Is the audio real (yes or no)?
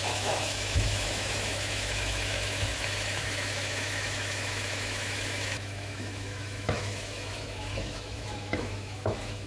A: no